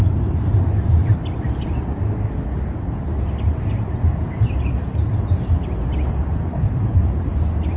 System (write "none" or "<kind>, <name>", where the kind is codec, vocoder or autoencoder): vocoder, BigVGAN v2